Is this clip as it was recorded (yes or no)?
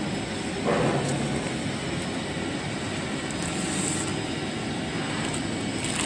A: yes